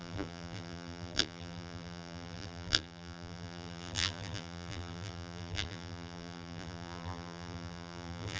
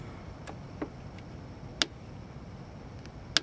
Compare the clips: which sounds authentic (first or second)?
second